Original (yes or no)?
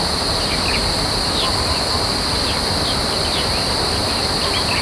yes